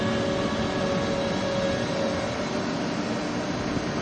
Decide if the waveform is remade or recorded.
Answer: recorded